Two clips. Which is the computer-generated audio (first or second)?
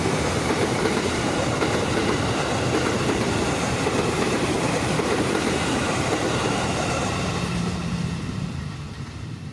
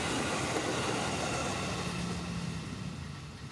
first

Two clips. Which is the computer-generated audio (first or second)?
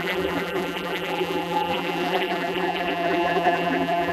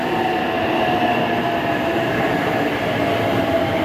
first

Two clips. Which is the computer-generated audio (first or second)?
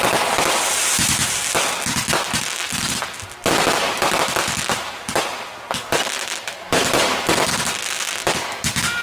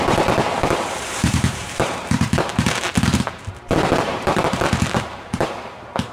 second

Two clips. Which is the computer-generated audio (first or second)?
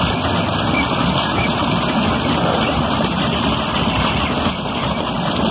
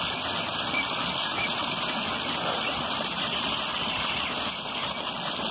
first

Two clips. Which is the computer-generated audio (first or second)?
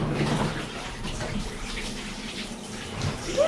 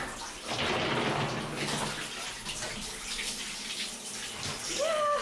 first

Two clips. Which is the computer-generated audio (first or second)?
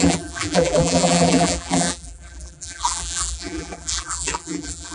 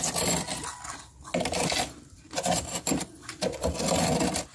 first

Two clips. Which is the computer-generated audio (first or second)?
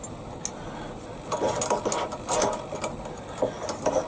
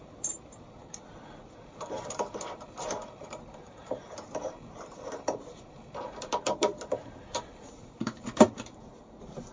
second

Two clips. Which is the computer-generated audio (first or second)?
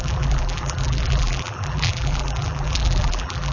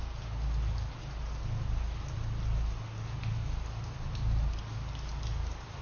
first